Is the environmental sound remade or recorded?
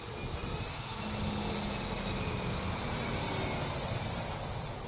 recorded